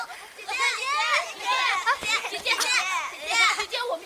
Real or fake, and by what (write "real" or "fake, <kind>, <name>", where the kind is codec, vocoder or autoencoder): real